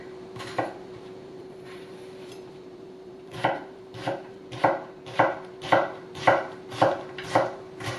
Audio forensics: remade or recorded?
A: remade